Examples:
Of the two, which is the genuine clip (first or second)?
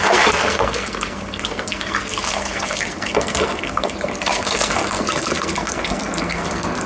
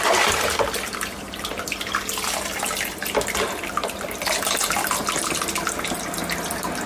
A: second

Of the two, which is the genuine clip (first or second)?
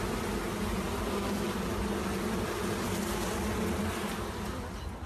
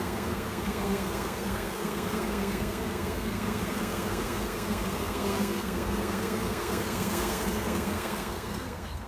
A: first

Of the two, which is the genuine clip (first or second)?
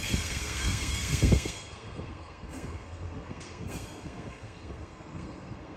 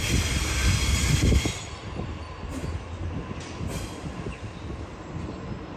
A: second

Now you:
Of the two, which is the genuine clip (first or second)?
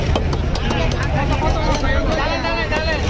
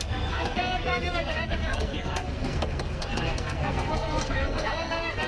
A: first